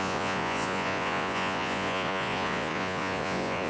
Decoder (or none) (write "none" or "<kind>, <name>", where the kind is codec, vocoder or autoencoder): vocoder, Vocos